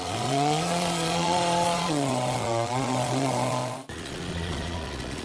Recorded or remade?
remade